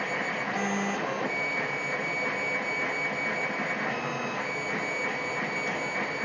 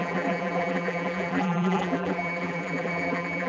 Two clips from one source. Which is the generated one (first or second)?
second